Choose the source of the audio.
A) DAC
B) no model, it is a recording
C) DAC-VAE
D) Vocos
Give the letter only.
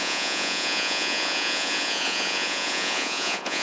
D